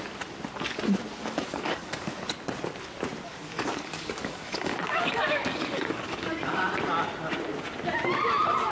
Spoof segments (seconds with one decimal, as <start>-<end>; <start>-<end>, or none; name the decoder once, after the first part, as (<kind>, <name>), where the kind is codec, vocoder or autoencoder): 1.2-2.1 (codec, DAC); 3.4-6.6